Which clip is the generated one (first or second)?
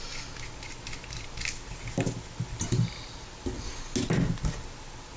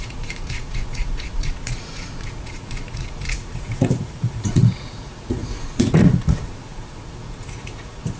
second